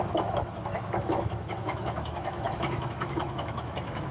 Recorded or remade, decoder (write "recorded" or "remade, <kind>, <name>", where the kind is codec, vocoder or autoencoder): remade, autoencoder, DAC-VAE